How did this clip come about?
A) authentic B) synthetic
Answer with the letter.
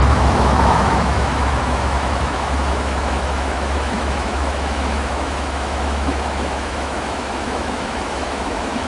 B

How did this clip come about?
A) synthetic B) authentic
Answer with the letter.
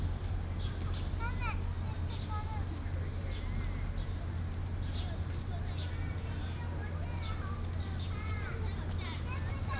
B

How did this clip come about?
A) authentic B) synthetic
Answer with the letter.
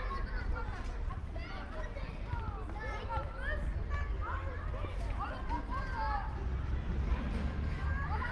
A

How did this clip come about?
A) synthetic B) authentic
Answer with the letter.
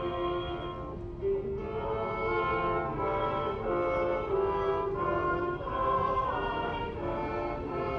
B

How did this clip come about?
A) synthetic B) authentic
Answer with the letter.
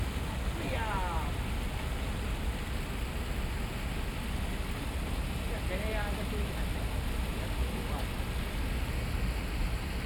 B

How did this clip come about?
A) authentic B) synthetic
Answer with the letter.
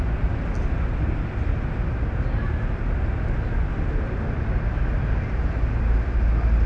A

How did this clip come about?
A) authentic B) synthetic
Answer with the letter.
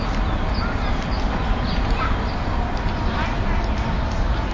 A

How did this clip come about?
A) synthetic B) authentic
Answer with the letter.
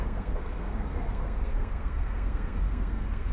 A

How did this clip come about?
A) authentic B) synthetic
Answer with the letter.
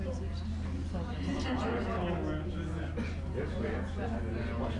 A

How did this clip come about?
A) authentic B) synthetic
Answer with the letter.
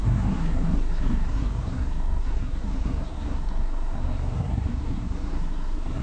B